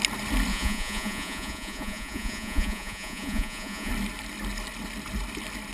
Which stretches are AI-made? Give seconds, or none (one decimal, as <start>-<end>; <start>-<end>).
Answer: 0.5-3.9